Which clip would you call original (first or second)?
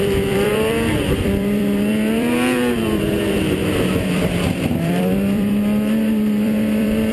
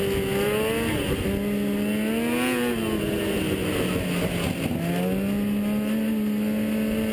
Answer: second